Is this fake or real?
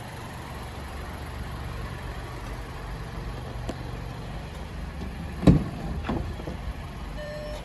fake